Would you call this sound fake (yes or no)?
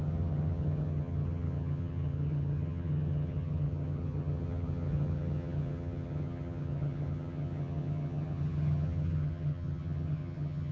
yes